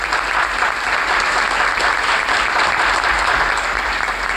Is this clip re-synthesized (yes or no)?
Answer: no